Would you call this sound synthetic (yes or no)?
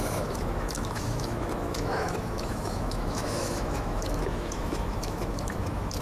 yes